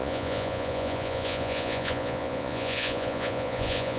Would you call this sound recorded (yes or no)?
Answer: no